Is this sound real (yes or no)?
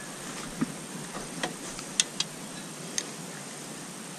yes